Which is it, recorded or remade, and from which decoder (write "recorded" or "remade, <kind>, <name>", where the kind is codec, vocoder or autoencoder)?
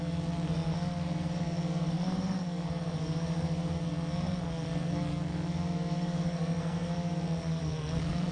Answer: remade, codec, SNAC